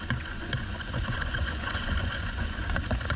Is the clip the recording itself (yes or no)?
no